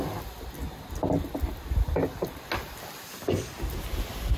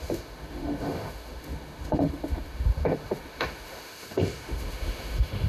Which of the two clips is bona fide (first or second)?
first